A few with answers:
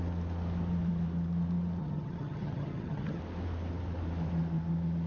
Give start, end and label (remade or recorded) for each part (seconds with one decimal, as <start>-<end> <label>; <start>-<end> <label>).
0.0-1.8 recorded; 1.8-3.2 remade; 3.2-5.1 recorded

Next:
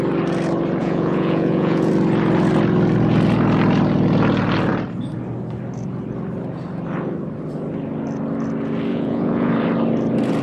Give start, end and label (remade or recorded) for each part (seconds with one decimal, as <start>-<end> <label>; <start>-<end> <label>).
0.0-0.8 recorded; 0.8-1.9 remade; 1.9-8.9 recorded; 8.9-9.5 remade; 9.5-10.4 recorded

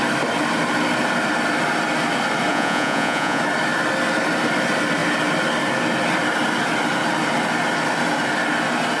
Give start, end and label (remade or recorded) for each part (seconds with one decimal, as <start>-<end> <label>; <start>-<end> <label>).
0.0-2.5 recorded; 2.5-3.4 remade; 3.4-9.0 recorded

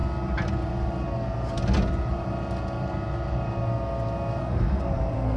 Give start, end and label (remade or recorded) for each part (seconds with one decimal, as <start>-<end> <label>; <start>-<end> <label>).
0.0-4.4 recorded; 4.4-5.4 remade

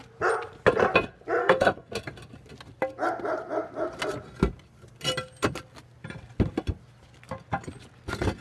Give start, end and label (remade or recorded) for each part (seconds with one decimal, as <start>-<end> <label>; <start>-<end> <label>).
0.0-1.4 recorded; 1.4-1.9 remade; 1.9-8.4 recorded

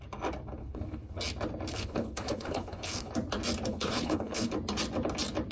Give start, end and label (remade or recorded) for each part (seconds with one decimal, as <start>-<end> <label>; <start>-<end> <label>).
0.0-0.6 recorded; 0.6-1.2 remade; 1.2-1.7 recorded; 1.7-3.1 remade; 3.1-3.7 recorded; 3.7-4.5 remade; 4.5-5.5 recorded

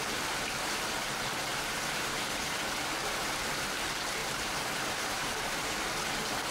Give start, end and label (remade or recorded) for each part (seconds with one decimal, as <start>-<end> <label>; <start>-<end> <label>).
0.0-1.5 recorded; 1.5-2.6 remade; 2.6-3.0 recorded; 3.0-3.7 remade; 3.7-4.2 recorded; 4.2-5.8 remade; 5.8-6.5 recorded